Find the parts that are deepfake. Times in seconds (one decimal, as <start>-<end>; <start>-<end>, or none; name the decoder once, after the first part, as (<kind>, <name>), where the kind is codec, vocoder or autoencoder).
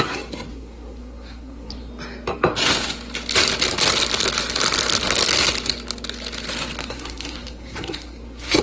0.5-1.9 (codec, SNAC); 6.8-8.6